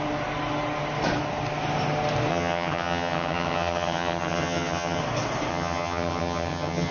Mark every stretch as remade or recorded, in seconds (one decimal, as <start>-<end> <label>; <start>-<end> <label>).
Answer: 0.0-2.3 recorded; 2.3-5.0 remade; 5.0-5.5 recorded; 5.5-6.9 remade